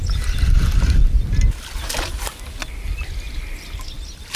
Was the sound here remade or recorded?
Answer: recorded